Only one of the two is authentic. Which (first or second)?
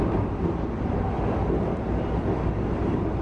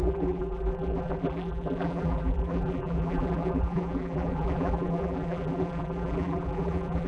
first